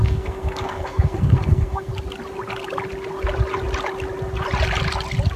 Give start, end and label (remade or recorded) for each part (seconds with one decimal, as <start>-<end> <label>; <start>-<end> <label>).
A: 0.0-1.9 remade; 1.9-5.4 recorded